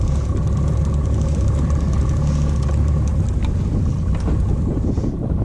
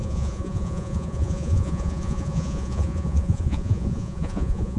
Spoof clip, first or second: second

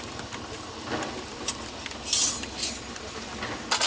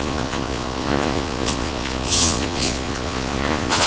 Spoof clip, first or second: second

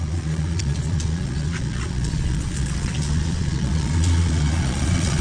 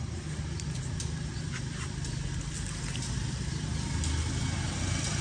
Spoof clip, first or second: first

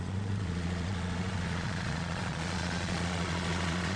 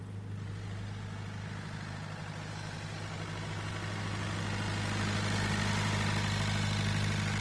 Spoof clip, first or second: first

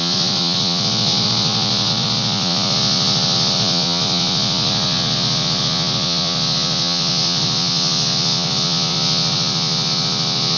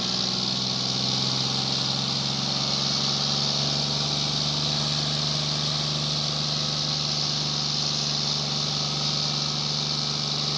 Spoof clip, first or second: first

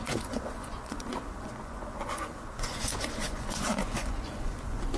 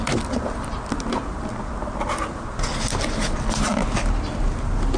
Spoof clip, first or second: first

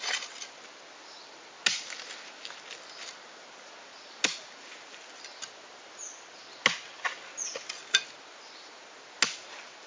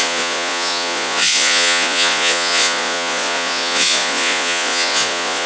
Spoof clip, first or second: second